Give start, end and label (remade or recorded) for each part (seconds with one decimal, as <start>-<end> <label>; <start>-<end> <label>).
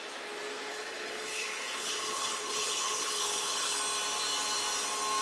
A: 0.0-0.7 recorded; 0.7-3.8 remade; 3.8-5.2 recorded